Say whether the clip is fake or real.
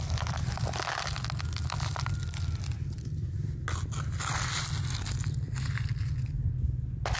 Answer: real